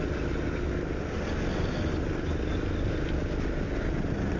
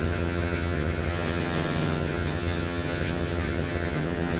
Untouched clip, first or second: first